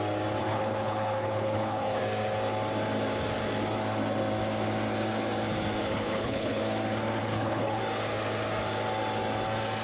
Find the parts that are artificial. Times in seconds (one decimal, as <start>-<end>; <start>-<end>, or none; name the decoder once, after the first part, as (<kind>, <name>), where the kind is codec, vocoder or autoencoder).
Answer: 0.4-2.0 (codec, HILCodec); 5.8-6.6; 7.2-7.8